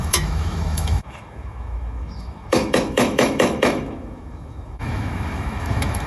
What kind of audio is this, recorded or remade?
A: remade